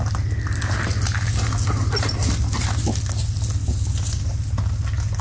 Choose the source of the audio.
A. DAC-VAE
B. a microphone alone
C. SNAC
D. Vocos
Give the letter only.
B